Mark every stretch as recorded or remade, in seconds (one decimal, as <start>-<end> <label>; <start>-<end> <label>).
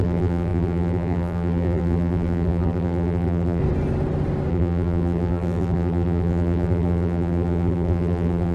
0.0-3.6 remade; 3.6-4.5 recorded; 4.5-8.5 remade